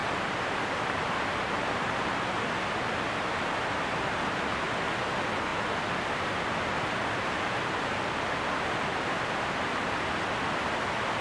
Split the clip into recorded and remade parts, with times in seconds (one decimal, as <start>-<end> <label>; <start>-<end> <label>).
0.0-0.7 remade; 0.7-11.2 recorded